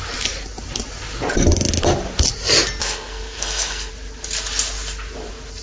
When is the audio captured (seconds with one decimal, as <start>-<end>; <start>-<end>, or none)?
0.0-2.8; 3.9-5.6